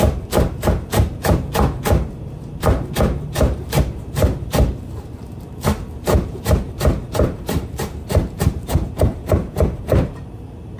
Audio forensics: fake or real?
fake